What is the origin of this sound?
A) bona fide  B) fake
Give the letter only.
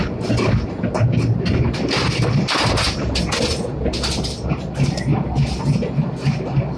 A